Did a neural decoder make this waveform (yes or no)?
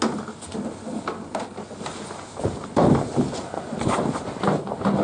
no